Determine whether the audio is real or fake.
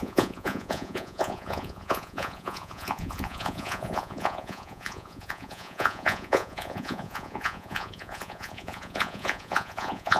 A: fake